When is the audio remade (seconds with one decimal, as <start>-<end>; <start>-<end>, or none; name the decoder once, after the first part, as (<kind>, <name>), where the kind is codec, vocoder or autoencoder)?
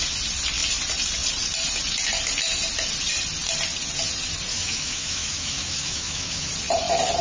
4.5-6.5 (autoencoder, DAC-VAE)